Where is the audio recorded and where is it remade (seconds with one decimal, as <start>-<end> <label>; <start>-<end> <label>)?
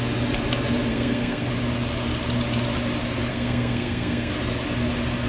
0.0-0.9 recorded; 0.9-1.5 remade; 1.5-3.3 recorded; 3.3-4.3 remade; 4.3-5.3 recorded